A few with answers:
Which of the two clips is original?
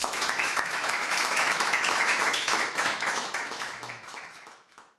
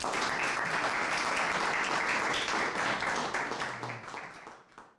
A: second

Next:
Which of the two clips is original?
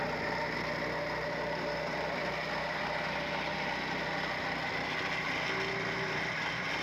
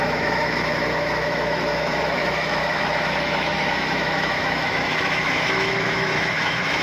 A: first